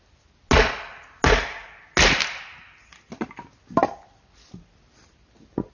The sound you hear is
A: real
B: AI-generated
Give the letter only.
A